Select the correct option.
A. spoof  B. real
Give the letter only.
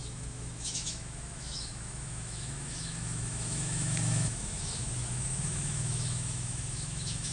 A